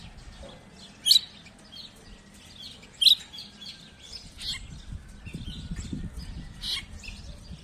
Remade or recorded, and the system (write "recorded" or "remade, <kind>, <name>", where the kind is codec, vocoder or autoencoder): recorded